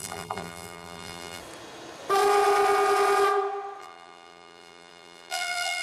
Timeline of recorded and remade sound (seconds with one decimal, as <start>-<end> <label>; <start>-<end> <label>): 0.0-1.4 remade; 1.4-3.8 recorded; 3.8-5.8 remade